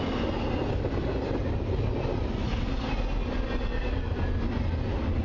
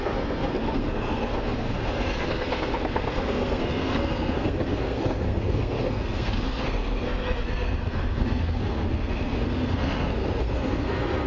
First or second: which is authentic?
first